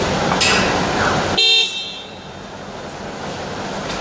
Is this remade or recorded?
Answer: recorded